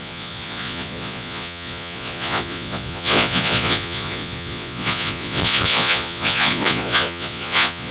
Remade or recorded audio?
remade